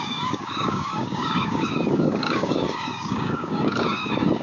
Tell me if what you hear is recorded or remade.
remade